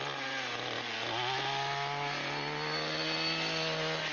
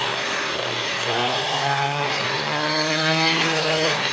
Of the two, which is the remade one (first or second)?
second